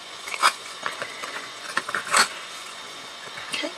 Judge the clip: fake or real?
fake